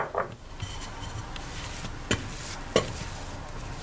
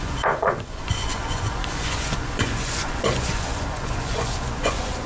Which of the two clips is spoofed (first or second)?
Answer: second